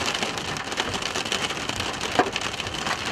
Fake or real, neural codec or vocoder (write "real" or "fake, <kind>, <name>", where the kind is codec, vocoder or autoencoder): real